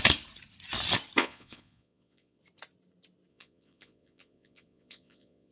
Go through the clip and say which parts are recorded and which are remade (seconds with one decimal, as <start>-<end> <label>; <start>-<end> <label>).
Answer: 0.0-1.2 recorded; 1.2-2.4 remade; 2.4-3.3 recorded; 3.3-5.5 remade